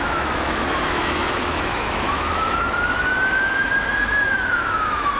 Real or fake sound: fake